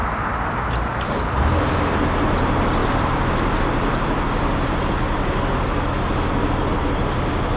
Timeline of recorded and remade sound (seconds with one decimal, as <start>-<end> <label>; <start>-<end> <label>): 0.0-2.8 recorded; 2.8-3.7 remade; 3.7-7.6 recorded